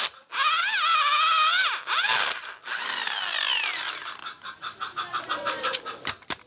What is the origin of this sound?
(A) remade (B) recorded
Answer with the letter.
B